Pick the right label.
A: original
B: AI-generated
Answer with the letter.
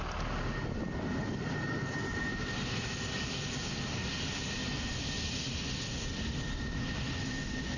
A